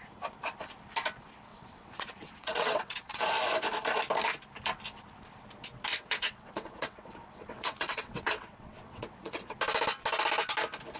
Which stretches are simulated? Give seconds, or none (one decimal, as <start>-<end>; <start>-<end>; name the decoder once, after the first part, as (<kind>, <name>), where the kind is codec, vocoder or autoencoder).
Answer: 1.5-3.2 (vocoder, WaveNeXt); 5.9-9.4